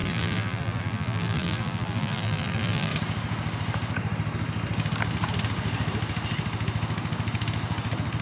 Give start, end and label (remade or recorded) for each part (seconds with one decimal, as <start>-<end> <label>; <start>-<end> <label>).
0.0-2.9 remade; 2.9-8.2 recorded